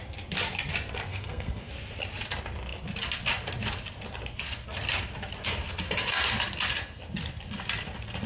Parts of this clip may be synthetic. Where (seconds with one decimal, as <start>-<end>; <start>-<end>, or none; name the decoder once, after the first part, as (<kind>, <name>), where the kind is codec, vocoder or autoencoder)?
1.1-1.7 (codec, SNAC)